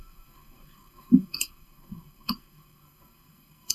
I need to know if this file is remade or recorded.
remade